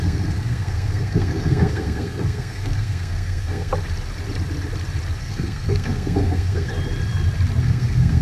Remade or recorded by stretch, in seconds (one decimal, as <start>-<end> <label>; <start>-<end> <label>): 0.0-3.7 remade; 3.7-5.2 recorded; 5.2-6.7 remade; 6.7-7.6 recorded; 7.6-8.2 remade